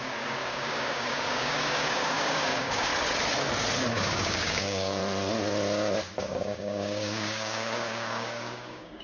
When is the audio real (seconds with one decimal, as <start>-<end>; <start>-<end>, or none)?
2.9-3.9; 5.0-6.2